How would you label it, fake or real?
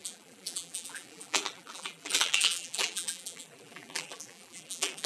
fake